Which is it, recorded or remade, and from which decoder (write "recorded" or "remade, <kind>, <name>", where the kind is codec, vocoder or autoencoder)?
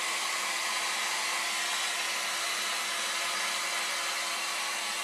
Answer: recorded